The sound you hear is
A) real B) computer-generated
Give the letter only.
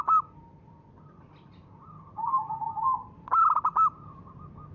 B